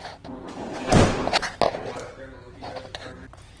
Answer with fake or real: real